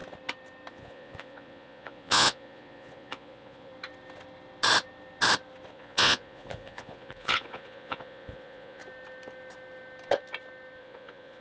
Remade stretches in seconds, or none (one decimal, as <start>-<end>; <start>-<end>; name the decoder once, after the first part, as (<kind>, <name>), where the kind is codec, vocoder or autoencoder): 0.7-3.7 (vocoder, Vocos); 5.7-8.8; 10.8-11.4